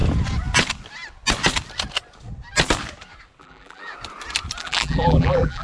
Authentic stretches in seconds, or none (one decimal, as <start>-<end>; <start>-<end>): 0.0-3.4; 3.9-4.6